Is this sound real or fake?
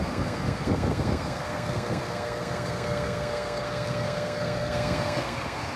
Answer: fake